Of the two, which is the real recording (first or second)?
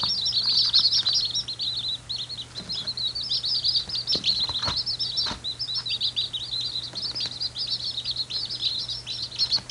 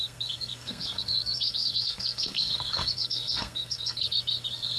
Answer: first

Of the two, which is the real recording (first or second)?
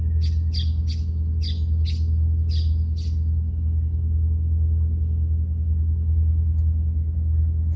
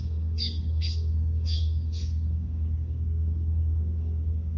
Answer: first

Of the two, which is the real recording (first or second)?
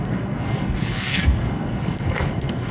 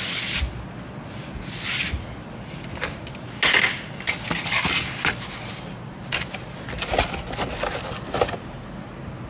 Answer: second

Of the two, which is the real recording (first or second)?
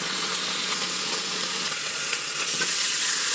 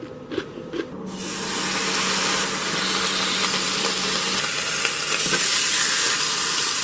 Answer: second